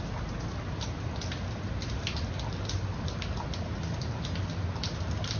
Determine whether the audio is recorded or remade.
recorded